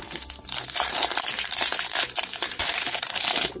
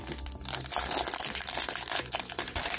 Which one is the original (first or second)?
second